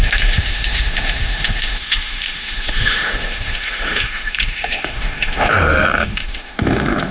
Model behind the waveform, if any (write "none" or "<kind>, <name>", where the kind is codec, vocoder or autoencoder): autoencoder, DAC-VAE